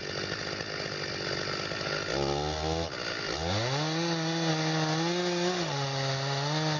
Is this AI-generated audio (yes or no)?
no